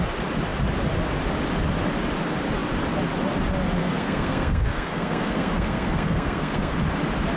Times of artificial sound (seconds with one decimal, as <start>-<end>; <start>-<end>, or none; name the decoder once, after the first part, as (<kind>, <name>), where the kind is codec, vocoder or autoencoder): 3.8-6.8 (codec, SNAC)